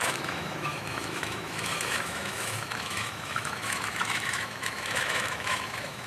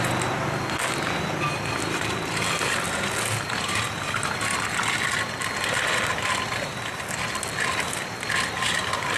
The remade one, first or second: first